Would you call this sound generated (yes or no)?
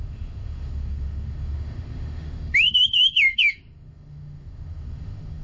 yes